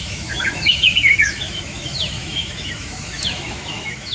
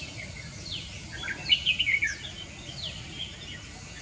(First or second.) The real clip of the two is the second